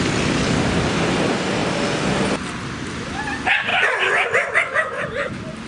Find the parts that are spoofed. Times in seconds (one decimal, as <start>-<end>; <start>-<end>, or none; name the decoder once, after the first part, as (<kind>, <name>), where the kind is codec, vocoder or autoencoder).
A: 3.7-5.3 (vocoder, Vocos)